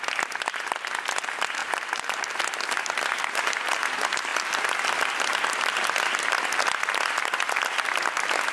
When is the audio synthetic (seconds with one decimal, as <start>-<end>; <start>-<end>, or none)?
1.6-2.3